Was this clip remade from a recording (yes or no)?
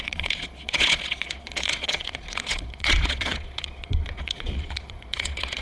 yes